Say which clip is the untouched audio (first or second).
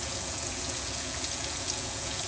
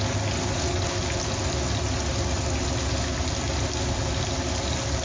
second